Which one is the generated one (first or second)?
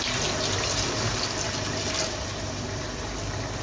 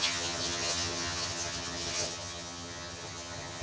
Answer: second